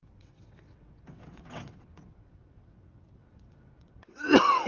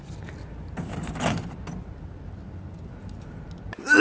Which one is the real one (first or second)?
second